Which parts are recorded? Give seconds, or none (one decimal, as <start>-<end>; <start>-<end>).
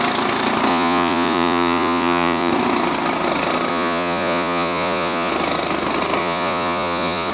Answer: 0.0-0.7; 2.5-3.7; 5.3-6.2